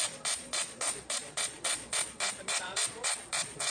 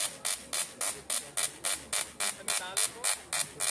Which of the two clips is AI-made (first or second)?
first